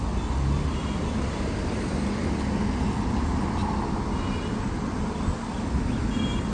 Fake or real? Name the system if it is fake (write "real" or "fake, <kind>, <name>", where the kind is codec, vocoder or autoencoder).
real